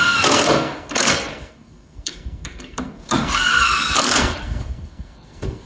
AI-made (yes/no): yes